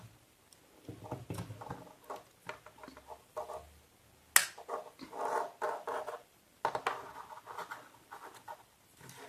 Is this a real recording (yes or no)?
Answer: yes